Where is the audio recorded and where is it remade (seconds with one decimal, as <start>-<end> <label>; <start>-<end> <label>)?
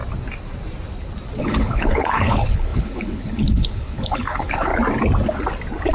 0.0-1.4 recorded; 1.4-4.7 remade; 4.7-5.9 recorded